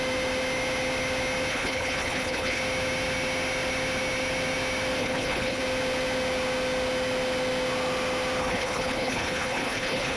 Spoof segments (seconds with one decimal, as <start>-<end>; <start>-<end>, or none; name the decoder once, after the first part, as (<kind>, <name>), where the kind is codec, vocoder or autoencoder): 1.5-2.6 (codec, HILCodec); 5.0-5.6; 8.4-10.2